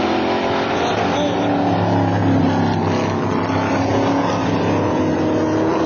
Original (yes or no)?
yes